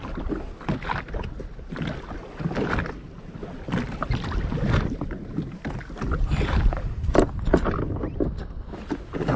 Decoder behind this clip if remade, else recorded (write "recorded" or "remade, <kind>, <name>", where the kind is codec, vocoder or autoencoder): recorded